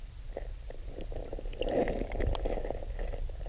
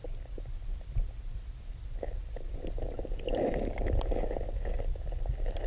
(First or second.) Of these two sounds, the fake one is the second